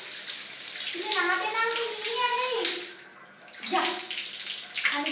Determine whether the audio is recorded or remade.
recorded